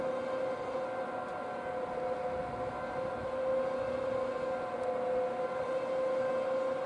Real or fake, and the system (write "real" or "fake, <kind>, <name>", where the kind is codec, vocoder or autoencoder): real